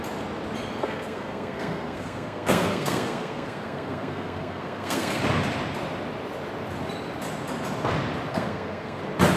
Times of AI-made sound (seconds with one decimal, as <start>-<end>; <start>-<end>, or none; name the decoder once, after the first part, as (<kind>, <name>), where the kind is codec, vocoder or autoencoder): 0.8-5.2 (codec, SNAC); 8.3-9.0